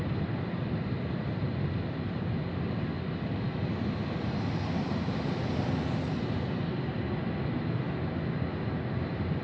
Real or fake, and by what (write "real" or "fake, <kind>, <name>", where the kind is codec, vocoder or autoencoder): real